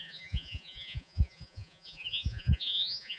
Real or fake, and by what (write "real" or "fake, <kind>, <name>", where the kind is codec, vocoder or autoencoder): fake, vocoder, Vocos